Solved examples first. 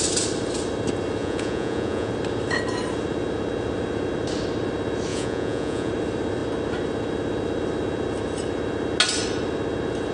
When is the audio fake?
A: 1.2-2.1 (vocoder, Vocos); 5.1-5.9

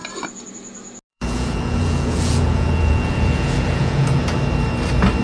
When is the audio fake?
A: 1.1-4.2 (vocoder, Vocos)